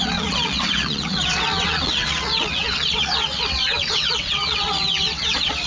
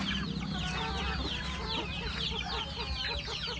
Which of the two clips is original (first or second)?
second